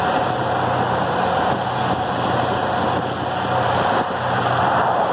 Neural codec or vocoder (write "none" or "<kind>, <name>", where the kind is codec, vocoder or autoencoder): none